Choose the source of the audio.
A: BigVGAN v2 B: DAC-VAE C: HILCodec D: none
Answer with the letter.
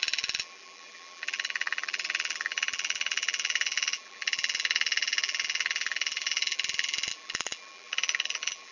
A